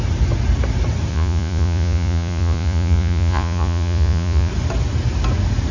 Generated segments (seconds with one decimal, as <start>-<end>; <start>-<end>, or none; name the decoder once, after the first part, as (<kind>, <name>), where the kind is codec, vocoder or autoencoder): 1.1-4.5 (vocoder, Vocos)